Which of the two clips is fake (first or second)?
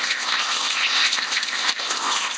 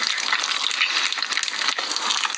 first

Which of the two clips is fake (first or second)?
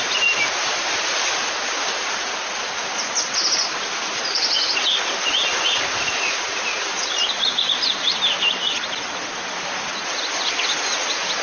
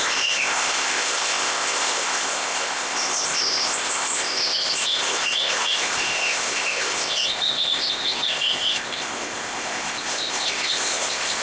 second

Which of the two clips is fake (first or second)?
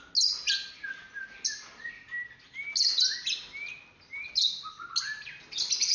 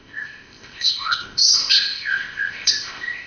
second